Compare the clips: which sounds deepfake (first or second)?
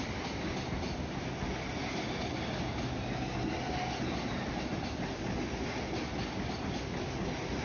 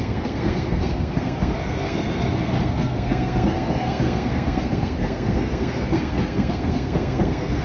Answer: second